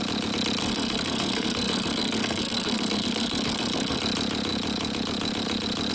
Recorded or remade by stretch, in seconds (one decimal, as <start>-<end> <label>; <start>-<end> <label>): 0.0-0.6 recorded; 0.6-4.0 remade; 4.0-5.9 recorded